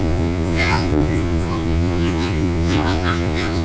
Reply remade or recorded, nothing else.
remade